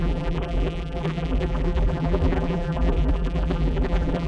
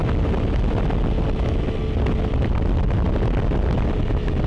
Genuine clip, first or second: second